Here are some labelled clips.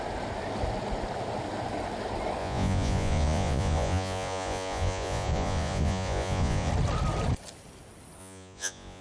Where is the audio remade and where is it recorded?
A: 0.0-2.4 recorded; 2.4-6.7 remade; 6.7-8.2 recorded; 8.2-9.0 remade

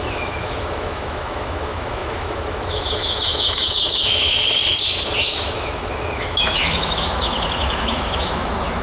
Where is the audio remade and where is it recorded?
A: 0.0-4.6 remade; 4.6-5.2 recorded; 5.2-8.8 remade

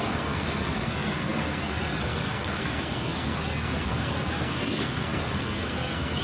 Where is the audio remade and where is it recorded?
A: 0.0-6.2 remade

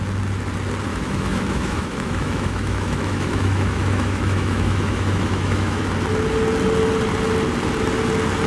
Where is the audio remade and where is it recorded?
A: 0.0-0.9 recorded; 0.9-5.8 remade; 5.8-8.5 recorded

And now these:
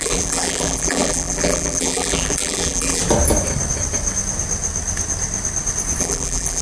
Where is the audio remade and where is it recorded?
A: 0.0-3.0 remade; 3.0-6.0 recorded; 6.0-6.6 remade

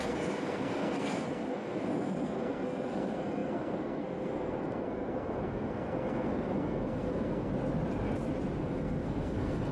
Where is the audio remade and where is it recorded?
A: 0.0-7.5 remade; 7.5-8.6 recorded; 8.6-9.7 remade

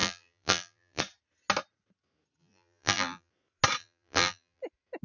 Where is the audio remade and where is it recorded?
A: 0.0-1.0 remade; 1.0-2.4 recorded; 2.4-3.3 remade; 3.3-3.8 recorded; 3.8-4.6 remade; 4.6-5.0 recorded